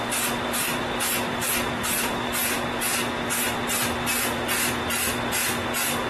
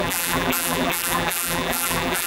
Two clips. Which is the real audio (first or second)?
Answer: first